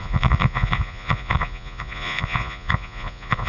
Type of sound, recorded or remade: remade